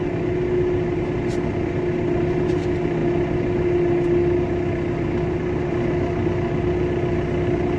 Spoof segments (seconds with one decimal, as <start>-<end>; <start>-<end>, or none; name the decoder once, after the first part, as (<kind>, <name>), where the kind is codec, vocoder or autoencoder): none